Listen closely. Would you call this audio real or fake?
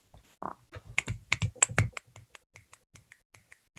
real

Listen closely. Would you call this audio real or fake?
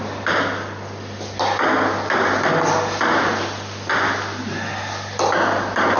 real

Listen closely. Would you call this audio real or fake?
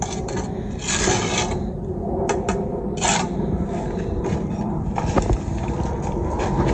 real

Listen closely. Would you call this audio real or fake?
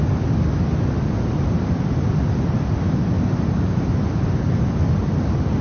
real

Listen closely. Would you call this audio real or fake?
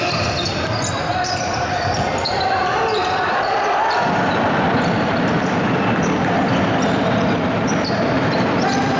fake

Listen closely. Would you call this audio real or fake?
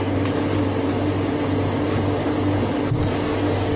real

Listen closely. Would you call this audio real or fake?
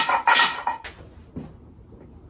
real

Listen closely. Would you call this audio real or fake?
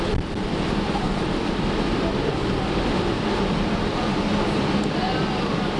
fake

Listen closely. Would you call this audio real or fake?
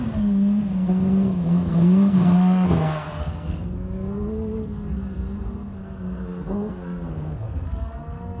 fake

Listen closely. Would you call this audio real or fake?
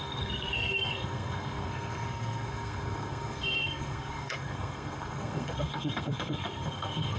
fake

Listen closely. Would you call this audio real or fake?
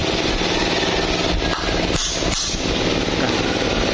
real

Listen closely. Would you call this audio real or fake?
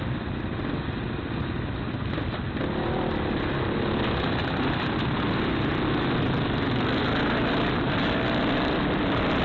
real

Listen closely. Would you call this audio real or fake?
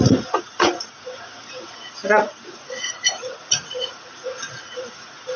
fake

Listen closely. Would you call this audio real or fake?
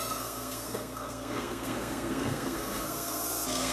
fake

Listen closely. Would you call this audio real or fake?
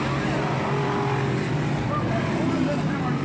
real